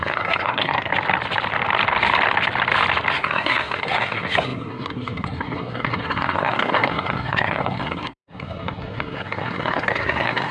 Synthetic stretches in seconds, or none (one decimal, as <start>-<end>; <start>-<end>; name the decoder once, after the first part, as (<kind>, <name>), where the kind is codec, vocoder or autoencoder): 0.0-0.9 (codec, SNAC); 3.1-10.5